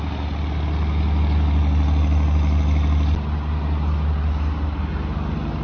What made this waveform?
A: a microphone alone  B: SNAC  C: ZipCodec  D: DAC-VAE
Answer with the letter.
A